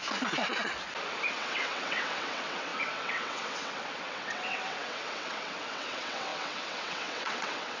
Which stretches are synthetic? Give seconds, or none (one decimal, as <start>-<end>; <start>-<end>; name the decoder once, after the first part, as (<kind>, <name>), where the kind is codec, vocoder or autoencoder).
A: 1.3-7.8 (vocoder, WaveNeXt)